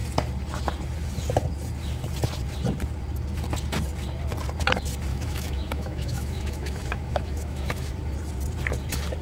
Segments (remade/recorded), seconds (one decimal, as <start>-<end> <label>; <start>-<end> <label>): 0.0-5.1 recorded; 5.1-7.9 remade; 7.9-9.2 recorded

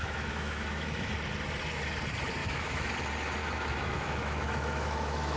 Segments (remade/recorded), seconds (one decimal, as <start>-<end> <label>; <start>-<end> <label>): 0.0-1.1 remade; 1.1-2.4 recorded; 2.4-2.9 remade; 2.9-3.4 recorded; 3.4-5.4 remade

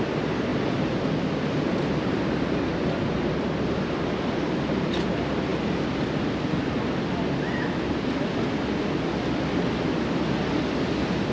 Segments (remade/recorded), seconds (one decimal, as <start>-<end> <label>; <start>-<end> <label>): 0.0-11.3 recorded